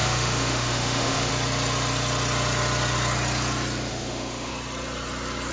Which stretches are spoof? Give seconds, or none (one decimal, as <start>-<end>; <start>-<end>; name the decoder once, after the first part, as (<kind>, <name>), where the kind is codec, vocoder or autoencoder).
0.0-1.3 (autoencoder, DAC-VAE); 3.9-4.5